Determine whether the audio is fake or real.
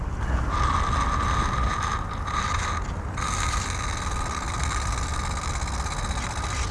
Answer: real